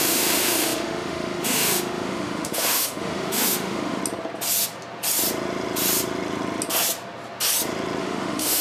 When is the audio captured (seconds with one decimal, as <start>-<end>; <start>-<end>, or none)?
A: 4.0-8.0